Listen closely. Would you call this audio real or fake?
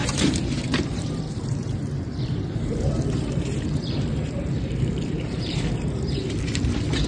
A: fake